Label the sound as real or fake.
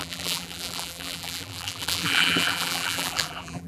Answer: fake